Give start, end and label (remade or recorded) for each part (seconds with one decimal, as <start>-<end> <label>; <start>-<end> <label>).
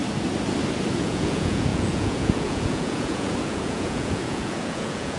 0.0-1.0 recorded; 1.0-5.2 remade